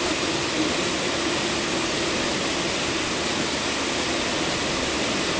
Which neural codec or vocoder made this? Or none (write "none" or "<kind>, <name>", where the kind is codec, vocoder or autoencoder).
none